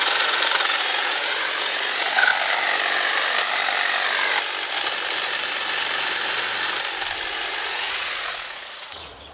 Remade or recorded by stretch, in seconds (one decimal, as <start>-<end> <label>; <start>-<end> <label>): 0.0-2.3 remade; 2.3-7.3 recorded; 7.3-9.3 remade